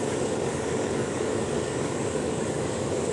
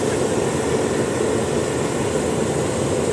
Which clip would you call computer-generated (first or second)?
first